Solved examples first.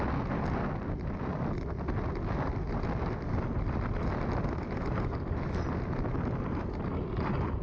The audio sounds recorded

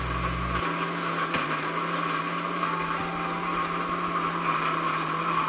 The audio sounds recorded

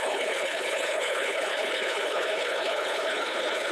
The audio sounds remade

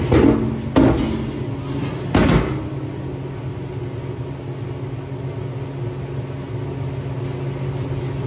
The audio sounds recorded